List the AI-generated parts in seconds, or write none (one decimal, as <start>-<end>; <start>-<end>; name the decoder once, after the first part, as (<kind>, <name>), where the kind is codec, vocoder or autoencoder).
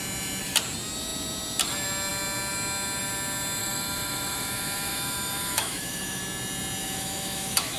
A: 3.6-6.2 (autoencoder, DAC-VAE); 6.8-7.8